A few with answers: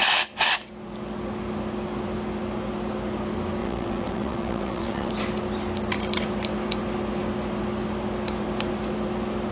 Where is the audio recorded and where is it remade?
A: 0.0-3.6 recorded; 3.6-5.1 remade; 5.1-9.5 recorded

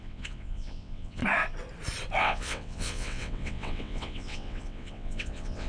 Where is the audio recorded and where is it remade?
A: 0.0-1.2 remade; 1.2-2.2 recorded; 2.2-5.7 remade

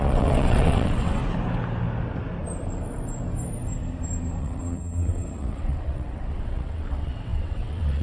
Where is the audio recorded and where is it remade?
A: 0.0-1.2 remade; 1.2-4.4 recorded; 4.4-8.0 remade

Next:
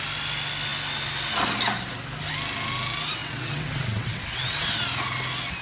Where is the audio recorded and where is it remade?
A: 0.0-3.2 recorded; 3.2-4.7 remade; 4.7-5.6 recorded

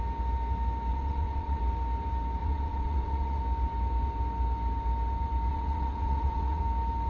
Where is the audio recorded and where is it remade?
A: 0.0-0.9 recorded; 0.9-1.6 remade; 1.6-2.4 recorded; 2.4-3.4 remade; 3.4-5.5 recorded; 5.5-6.6 remade; 6.6-7.1 recorded

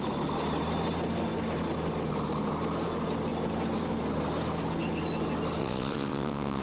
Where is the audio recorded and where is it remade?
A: 0.0-5.6 recorded; 5.6-6.6 remade